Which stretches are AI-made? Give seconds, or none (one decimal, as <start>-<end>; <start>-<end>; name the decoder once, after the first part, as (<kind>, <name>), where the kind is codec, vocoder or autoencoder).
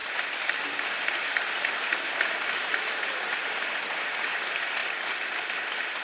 none